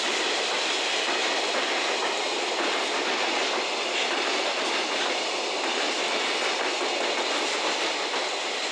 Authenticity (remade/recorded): recorded